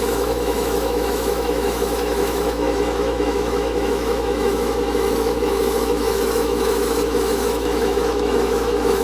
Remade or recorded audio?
remade